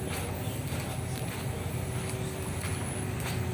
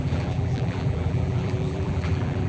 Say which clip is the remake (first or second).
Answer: second